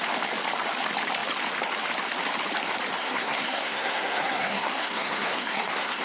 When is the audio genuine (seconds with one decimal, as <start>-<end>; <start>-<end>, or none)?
0.0-3.0

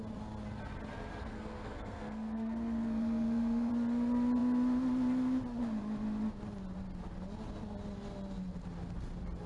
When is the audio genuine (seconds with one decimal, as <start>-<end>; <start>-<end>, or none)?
0.0-1.2; 3.7-9.5

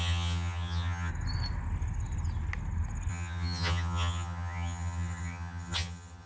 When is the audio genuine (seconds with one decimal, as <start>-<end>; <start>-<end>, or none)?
1.1-3.1

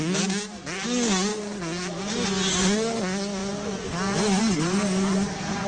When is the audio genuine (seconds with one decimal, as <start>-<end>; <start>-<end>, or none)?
0.0-5.7

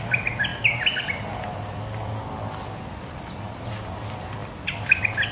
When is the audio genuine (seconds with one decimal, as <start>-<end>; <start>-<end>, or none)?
0.0-5.3